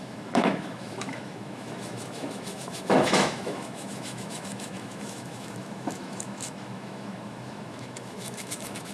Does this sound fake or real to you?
fake